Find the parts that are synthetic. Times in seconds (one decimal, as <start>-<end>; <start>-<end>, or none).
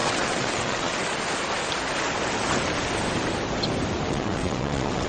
0.0-1.0; 4.1-5.1